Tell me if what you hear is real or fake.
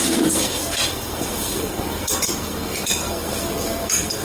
fake